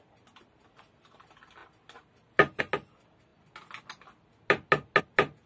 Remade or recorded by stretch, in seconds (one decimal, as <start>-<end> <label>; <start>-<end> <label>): 0.0-5.5 recorded